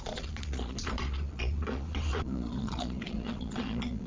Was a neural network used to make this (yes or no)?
yes